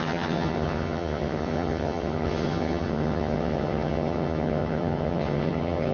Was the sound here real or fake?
fake